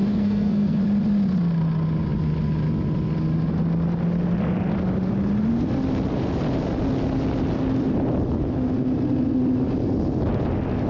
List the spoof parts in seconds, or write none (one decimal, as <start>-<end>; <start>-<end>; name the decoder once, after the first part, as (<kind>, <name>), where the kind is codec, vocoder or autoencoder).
0.0-0.8 (codec, SNAC)